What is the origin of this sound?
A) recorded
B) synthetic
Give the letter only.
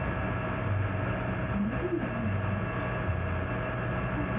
A